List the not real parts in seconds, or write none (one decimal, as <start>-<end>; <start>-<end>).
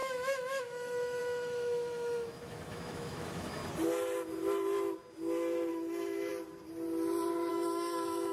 0.0-3.6; 5.7-6.3; 7.5-8.3